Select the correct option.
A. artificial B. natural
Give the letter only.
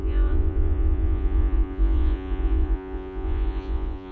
A